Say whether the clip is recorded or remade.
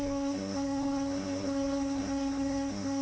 remade